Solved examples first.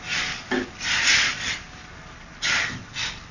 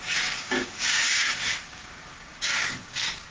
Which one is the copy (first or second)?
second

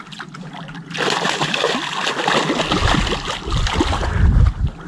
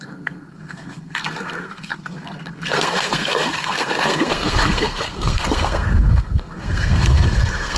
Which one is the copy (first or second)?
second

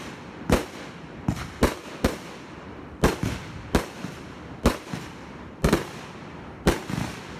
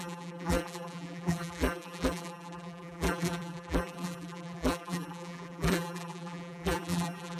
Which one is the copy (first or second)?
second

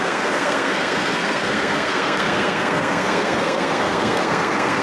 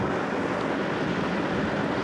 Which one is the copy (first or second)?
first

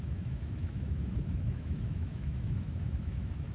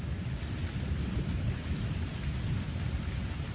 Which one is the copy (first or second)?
first